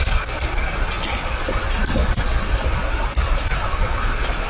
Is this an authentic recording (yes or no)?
yes